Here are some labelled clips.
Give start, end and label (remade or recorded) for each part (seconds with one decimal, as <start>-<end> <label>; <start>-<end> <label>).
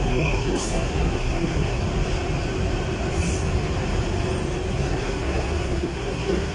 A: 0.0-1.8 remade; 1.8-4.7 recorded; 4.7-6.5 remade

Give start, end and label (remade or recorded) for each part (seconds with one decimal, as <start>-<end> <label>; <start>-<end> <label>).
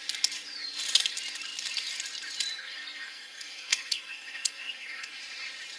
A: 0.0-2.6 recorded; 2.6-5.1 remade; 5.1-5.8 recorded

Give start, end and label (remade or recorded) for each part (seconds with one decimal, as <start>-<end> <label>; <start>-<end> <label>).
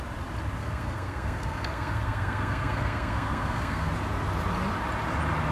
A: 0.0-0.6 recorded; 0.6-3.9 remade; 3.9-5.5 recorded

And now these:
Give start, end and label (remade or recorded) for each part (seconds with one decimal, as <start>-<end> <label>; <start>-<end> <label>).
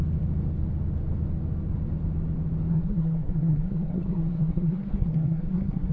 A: 0.0-2.7 recorded; 2.7-5.9 remade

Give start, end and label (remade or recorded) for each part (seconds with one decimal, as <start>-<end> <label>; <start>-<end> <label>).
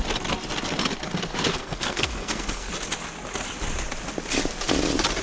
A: 0.0-1.5 recorded; 1.5-2.7 remade; 2.7-5.2 recorded